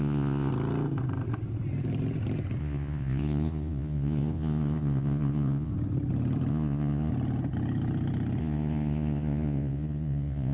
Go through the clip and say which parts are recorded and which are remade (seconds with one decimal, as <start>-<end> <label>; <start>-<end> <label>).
0.0-0.5 remade; 0.5-2.6 recorded; 2.6-5.7 remade; 5.7-6.5 recorded; 6.5-7.1 remade; 7.1-8.4 recorded; 8.4-10.5 remade